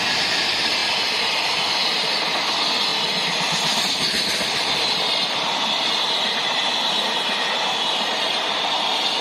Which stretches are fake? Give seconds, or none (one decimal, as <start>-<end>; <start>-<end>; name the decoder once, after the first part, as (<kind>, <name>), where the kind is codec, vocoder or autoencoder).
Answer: 0.0-0.8 (vocoder, BigVGAN v2); 1.9-6.6; 7.3-9.2